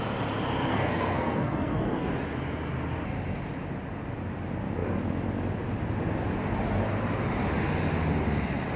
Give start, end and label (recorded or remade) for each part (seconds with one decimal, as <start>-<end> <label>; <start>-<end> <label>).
0.0-0.7 recorded; 0.7-2.1 remade; 2.1-8.8 recorded